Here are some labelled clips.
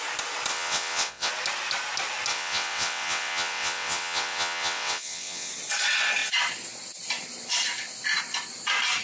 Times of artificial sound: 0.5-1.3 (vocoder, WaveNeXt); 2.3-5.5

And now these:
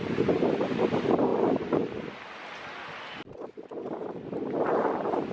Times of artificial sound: none

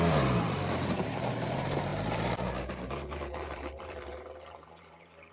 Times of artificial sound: 0.0-5.3 (vocoder, BigVGAN v2)

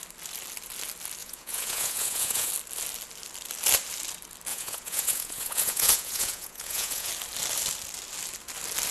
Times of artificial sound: 1.2-2.5 (vocoder, Vocos); 4.5-7.1

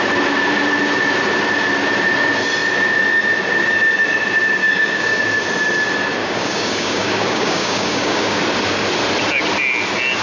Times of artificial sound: 4.6-5.2 (codec, DAC); 6.2-8.4

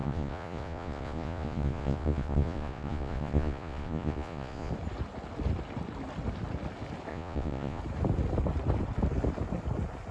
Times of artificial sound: 0.0-4.7 (vocoder, Vocos); 7.1-7.8